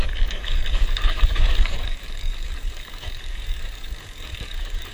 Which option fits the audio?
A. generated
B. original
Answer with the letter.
A